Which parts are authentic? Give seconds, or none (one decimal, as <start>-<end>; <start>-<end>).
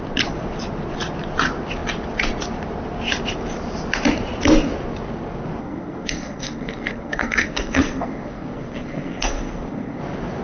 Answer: 0.0-5.6; 10.0-10.4